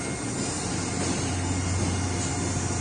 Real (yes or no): yes